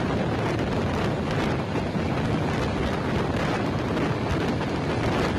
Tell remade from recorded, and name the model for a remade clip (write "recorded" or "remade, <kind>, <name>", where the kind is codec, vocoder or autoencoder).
recorded